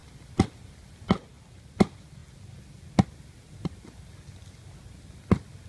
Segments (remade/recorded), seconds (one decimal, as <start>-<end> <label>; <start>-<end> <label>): 0.0-5.7 recorded